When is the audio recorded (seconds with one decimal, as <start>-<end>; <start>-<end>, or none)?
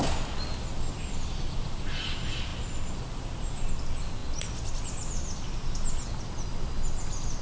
0.0-7.4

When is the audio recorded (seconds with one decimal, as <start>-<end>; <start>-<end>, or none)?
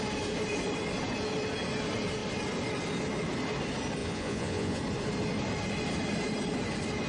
0.0-4.0; 4.8-7.1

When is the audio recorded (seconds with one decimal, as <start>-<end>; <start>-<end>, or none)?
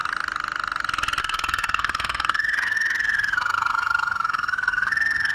0.0-1.2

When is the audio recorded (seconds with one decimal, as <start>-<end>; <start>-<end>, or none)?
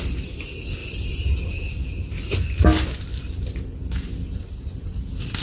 0.0-5.4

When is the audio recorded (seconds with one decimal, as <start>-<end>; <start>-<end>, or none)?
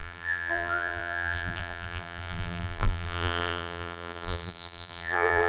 none